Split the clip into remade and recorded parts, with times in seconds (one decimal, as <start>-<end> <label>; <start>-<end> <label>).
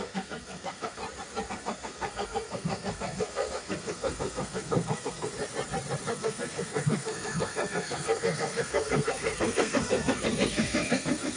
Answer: 0.0-1.0 remade; 1.0-1.5 recorded; 1.5-5.3 remade; 5.3-6.1 recorded; 6.1-11.4 remade